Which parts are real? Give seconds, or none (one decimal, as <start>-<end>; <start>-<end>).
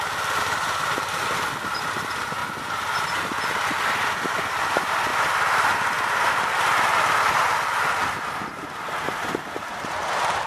2.4-4.6; 5.1-9.0